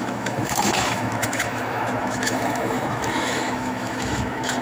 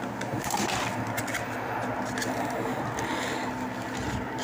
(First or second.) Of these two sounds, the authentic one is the second